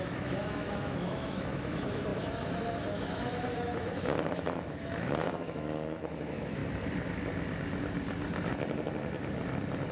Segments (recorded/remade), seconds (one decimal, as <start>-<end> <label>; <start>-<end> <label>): 0.0-6.6 remade; 6.6-9.9 recorded